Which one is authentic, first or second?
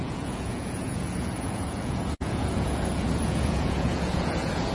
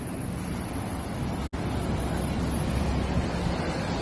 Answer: second